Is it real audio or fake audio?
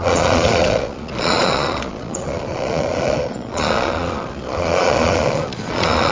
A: fake